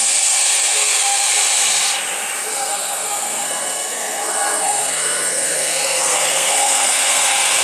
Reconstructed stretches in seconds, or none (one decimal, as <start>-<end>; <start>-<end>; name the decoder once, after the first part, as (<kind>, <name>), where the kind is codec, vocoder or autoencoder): 0.0-1.3 (codec, SNAC); 2.5-7.6